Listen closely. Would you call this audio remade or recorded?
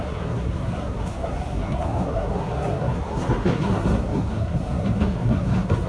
remade